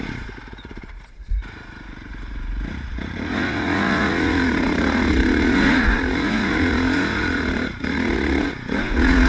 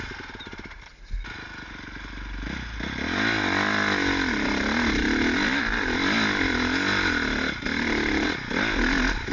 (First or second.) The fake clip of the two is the first